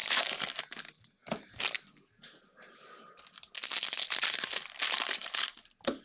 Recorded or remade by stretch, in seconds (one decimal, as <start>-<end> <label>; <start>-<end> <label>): 0.0-6.0 recorded

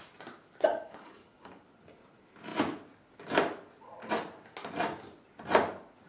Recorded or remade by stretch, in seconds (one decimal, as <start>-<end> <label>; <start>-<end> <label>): 0.0-0.7 recorded; 0.7-1.6 remade; 1.6-6.1 recorded

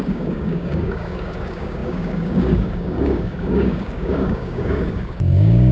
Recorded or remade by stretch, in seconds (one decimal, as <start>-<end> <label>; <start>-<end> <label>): 0.0-5.7 remade

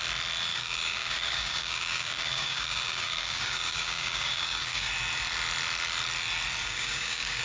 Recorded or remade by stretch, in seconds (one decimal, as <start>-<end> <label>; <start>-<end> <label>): 0.0-0.5 recorded; 0.5-4.9 remade; 4.9-6.6 recorded; 6.6-7.4 remade

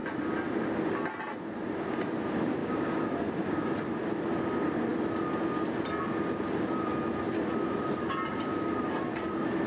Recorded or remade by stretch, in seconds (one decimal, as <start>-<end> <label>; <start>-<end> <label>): 0.0-2.6 recorded; 2.6-3.7 remade; 3.7-9.7 recorded

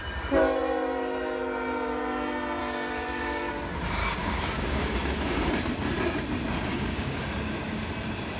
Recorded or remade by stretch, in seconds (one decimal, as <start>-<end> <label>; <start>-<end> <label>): 0.0-2.6 recorded; 2.6-3.5 remade; 3.5-4.0 recorded; 4.0-5.5 remade; 5.5-6.7 recorded; 6.7-7.2 remade; 7.2-8.4 recorded

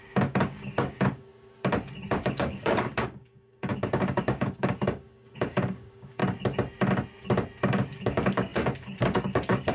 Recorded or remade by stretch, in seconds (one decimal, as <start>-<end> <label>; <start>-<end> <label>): 0.0-1.3 remade; 1.3-2.2 recorded; 2.2-6.2 remade; 6.2-7.6 recorded; 7.6-9.7 remade